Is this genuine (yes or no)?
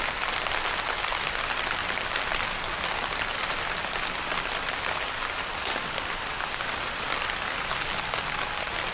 yes